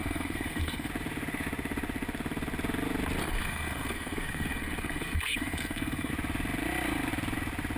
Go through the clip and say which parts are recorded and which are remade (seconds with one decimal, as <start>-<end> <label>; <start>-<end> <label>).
0.0-0.9 remade; 0.9-3.2 recorded; 3.2-6.1 remade; 6.1-7.8 recorded